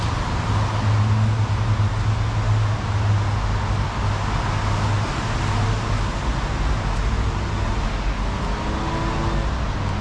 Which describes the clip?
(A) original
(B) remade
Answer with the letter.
A